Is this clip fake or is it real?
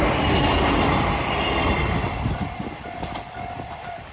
fake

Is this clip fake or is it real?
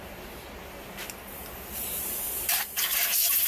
fake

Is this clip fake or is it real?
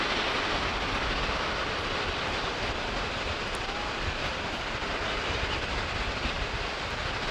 real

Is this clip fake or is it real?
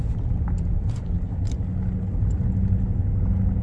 real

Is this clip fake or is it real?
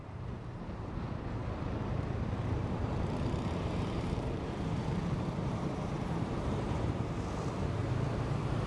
fake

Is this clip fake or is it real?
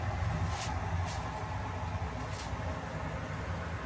real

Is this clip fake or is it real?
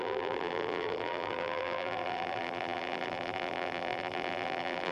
fake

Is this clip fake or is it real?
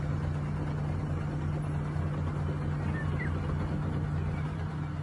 real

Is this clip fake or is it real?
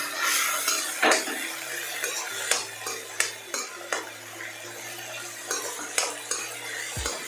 real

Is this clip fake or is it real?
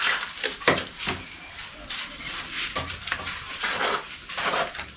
fake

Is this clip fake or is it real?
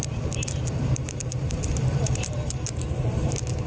fake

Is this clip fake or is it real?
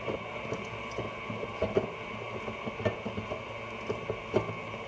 real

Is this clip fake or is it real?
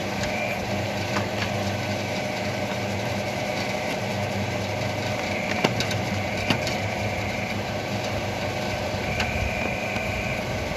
fake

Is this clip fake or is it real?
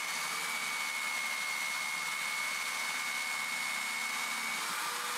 real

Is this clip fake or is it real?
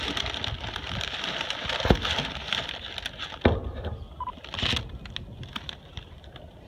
real